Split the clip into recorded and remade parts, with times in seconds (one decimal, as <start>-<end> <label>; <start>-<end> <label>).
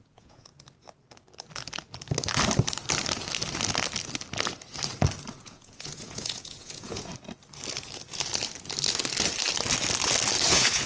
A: 0.0-0.5 remade; 0.5-5.3 recorded; 5.3-7.1 remade; 7.1-10.5 recorded; 10.5-10.9 remade